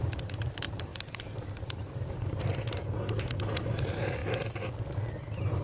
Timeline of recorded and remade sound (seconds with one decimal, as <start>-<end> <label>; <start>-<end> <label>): 0.0-2.5 remade; 2.5-3.3 recorded; 3.3-4.2 remade; 4.2-5.1 recorded; 5.1-5.6 remade